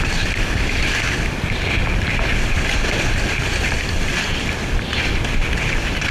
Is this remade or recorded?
recorded